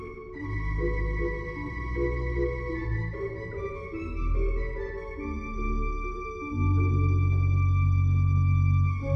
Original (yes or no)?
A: yes